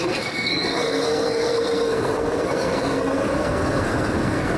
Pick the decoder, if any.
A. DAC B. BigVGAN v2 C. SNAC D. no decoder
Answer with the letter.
C